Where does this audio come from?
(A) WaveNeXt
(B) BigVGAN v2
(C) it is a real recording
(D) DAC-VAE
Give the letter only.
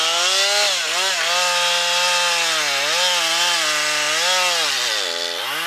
C